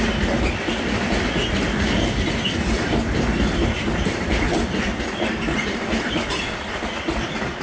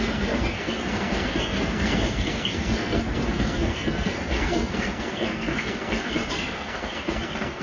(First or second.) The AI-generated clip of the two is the second